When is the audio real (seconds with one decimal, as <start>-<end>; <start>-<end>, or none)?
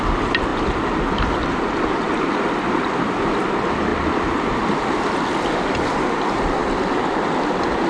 0.0-7.9